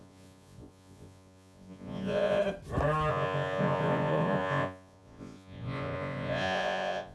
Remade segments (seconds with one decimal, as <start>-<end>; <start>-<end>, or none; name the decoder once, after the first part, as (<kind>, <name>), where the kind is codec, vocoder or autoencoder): 0.0-2.4 (vocoder, Vocos); 3.1-7.1